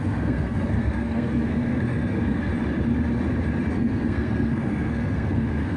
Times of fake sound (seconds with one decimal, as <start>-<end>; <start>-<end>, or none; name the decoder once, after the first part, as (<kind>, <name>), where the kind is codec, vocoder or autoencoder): 0.0-2.5 (codec, SNAC); 3.7-5.8

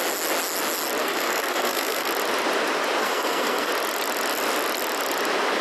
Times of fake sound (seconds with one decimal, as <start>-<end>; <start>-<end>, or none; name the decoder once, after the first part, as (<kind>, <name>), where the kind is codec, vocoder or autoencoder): 1.0-2.1 (codec, SNAC); 3.0-3.7

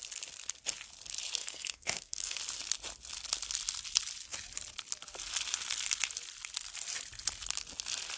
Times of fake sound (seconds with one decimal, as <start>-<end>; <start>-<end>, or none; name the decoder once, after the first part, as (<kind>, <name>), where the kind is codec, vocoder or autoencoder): 1.4-2.4 (codec, SNAC)